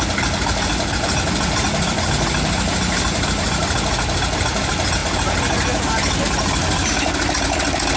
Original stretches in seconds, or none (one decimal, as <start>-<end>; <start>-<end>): 0.0-8.0